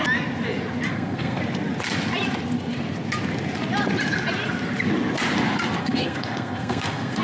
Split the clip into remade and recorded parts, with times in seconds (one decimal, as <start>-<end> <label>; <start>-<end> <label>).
0.0-0.9 recorded; 0.9-1.4 remade; 1.4-5.8 recorded; 5.8-7.2 remade